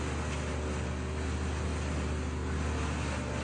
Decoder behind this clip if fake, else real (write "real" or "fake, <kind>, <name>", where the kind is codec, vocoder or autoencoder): real